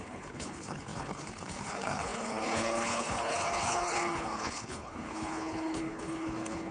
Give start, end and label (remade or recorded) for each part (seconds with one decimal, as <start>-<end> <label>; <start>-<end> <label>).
0.0-6.7 remade